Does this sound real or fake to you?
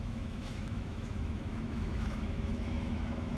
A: fake